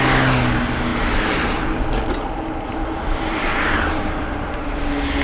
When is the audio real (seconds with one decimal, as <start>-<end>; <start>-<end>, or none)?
0.0-3.5; 4.8-5.2